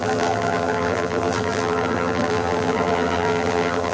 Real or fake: fake